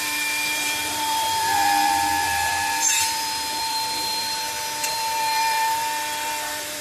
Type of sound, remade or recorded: remade